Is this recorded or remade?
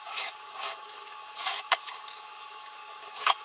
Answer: remade